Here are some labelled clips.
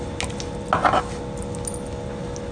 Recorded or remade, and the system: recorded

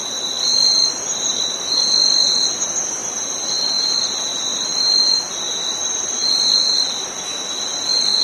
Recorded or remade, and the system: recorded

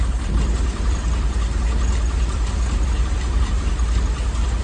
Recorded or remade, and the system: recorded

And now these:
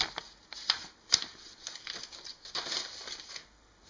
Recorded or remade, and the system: recorded